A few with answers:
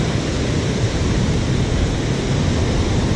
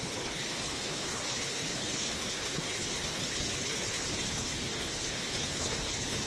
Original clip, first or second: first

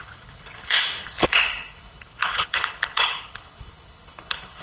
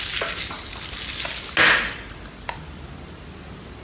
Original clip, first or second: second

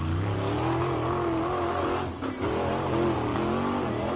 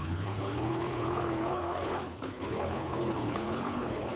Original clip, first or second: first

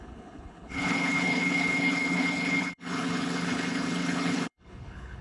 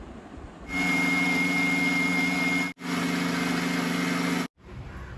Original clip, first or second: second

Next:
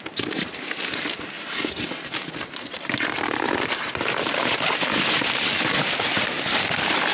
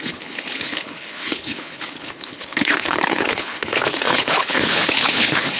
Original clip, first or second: first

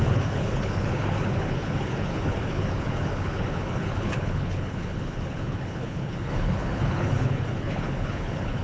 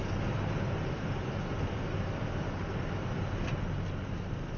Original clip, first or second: second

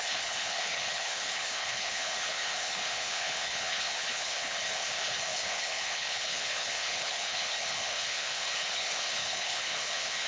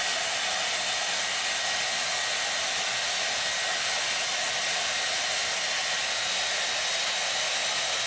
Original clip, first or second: second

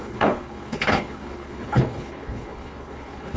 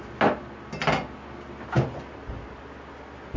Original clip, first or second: second